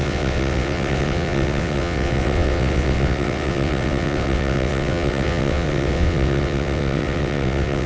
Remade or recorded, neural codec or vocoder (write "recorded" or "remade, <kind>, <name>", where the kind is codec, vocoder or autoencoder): remade, vocoder, WaveNeXt